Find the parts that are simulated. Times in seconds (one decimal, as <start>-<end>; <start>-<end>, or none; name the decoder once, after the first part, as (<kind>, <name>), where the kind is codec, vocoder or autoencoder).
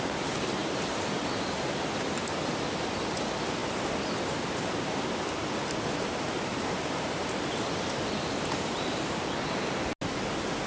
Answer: 0.6-1.2 (vocoder, BigVGAN v2); 6.5-7.6